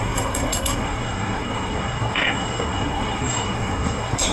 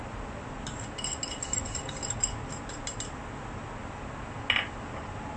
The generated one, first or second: first